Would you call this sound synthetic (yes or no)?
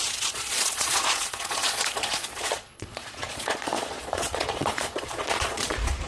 yes